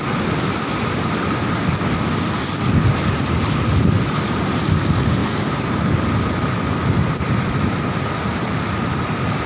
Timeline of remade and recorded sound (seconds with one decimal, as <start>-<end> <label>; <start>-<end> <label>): 0.0-9.5 recorded